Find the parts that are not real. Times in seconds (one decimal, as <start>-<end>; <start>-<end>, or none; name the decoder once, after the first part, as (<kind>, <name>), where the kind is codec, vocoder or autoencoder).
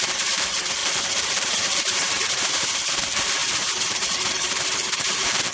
0.0-3.4 (vocoder, BigVGAN v2); 3.9-5.5